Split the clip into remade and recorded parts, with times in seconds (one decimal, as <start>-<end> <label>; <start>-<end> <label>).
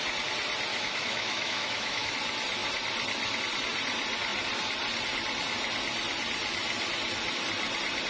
0.0-0.7 recorded; 0.7-2.1 remade; 2.1-8.1 recorded